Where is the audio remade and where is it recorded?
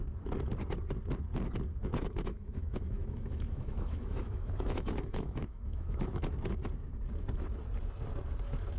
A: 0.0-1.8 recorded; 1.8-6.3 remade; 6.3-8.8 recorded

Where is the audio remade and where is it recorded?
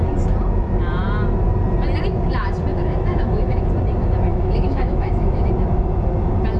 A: 0.0-2.7 recorded; 2.7-3.7 remade; 3.7-4.3 recorded; 4.3-5.5 remade; 5.5-6.6 recorded